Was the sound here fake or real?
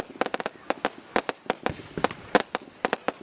real